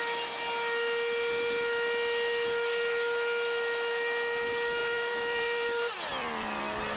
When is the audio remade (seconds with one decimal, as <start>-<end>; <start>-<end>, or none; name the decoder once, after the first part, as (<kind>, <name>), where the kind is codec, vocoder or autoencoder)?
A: 4.8-6.6 (vocoder, BigVGAN v2)